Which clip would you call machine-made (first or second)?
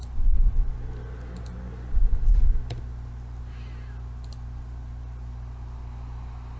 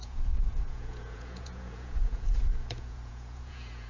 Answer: second